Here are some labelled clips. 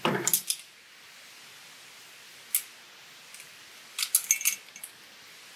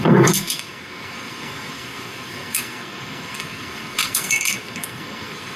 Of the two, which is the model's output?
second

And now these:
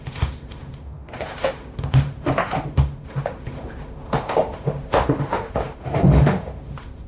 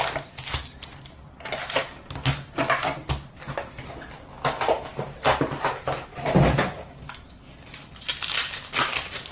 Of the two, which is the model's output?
first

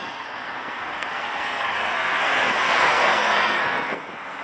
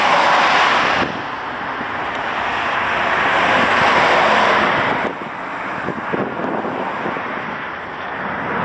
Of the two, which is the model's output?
first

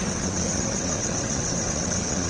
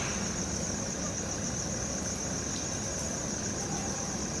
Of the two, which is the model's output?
first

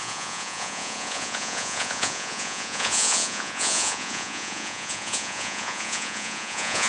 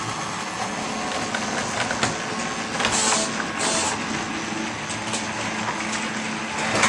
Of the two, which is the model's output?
first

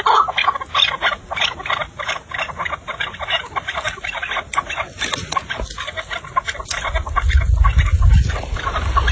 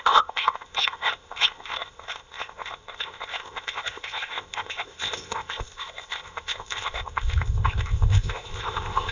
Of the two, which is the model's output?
second